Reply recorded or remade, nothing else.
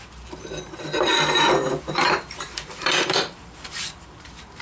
remade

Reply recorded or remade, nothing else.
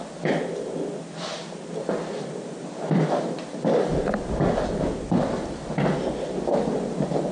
recorded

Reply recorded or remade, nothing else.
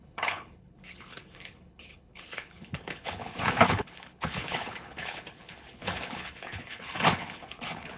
remade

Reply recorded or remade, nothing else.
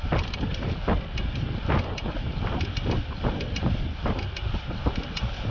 recorded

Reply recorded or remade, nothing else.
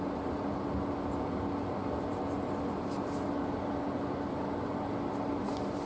recorded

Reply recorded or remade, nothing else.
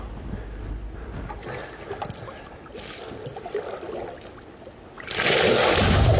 recorded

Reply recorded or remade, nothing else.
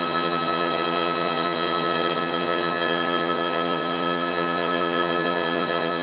remade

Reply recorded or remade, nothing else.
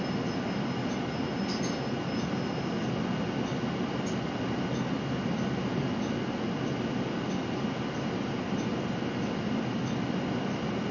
recorded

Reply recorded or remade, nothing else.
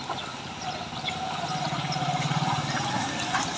recorded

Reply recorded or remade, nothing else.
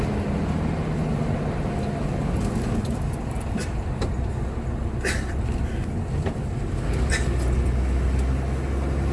recorded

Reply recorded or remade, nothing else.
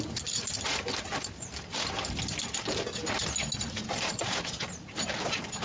recorded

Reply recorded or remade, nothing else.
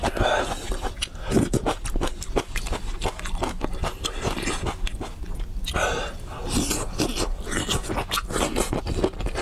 recorded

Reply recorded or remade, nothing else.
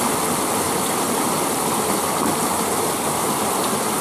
recorded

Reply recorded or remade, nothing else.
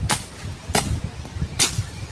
recorded